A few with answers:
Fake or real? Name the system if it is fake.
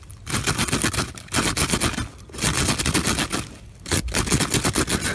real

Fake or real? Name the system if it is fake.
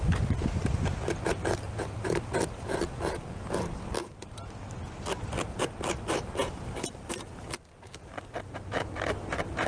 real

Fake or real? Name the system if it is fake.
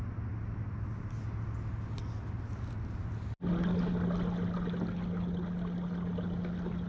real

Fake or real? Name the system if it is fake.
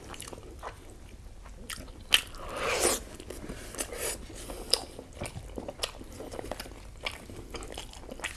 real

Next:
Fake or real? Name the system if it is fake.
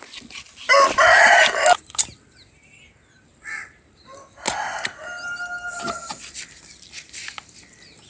real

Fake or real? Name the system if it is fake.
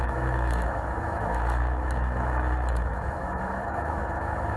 fake, autoencoder, DAC-VAE